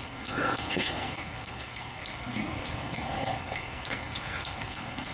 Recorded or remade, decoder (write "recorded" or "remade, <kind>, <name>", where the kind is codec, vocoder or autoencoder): remade, codec, SNAC